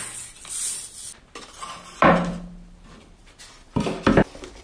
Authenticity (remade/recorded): recorded